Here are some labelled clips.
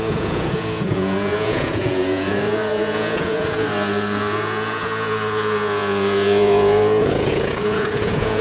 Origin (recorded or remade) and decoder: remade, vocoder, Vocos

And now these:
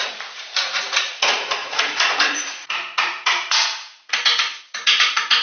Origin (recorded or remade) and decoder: remade, vocoder, Vocos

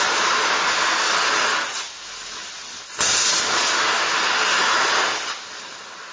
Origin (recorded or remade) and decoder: recorded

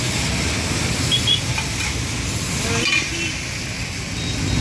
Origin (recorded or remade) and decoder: recorded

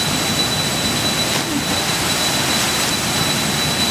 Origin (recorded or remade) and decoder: recorded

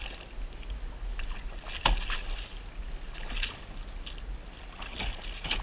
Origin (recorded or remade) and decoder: recorded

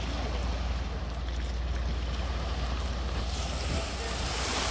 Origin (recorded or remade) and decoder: recorded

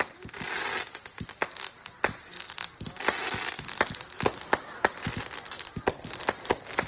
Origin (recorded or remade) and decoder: recorded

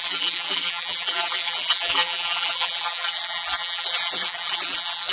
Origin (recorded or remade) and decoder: remade, vocoder, BigVGAN v2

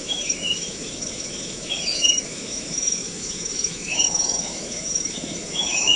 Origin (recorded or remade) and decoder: remade, autoencoder, DAC-VAE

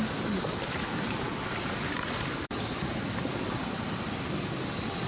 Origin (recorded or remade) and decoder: recorded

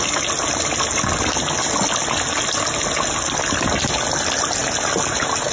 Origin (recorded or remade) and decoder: recorded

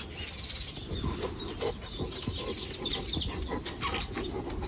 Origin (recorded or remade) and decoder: recorded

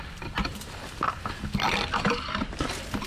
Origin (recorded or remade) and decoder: recorded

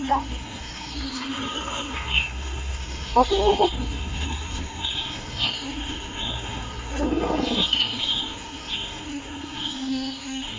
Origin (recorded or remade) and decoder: remade, codec, SNAC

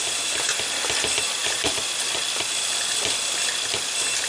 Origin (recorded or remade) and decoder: recorded